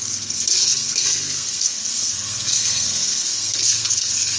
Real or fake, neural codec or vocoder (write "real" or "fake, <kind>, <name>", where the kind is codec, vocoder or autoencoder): fake, codec, SNAC